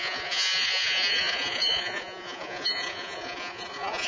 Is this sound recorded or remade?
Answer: remade